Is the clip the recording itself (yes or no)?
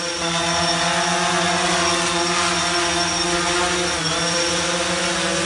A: yes